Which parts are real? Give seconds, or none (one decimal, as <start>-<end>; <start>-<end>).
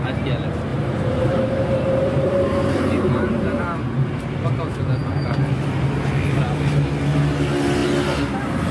0.0-0.7; 3.6-8.7